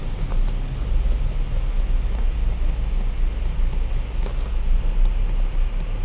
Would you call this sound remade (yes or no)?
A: no